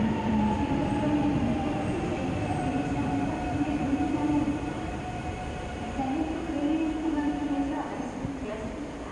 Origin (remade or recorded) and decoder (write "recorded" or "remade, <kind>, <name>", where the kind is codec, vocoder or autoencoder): remade, vocoder, BigVGAN v2